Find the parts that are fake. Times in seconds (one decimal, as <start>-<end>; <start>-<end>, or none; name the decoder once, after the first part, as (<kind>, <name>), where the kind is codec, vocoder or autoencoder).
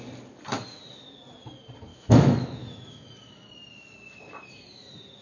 1.9-3.5 (autoencoder, DAC-VAE)